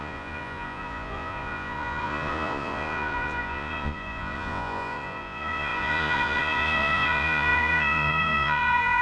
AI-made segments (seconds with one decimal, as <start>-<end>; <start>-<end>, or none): 0.0-9.0